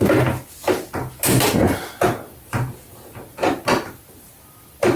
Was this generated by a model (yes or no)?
no